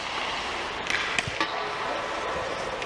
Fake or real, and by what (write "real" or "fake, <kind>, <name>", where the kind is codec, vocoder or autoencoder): real